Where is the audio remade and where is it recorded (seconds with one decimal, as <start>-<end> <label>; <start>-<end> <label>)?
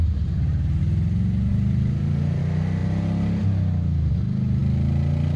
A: 0.0-0.8 remade; 0.8-1.5 recorded; 1.5-2.4 remade; 2.4-5.4 recorded